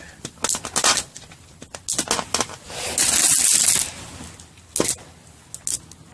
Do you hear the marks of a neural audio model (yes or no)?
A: no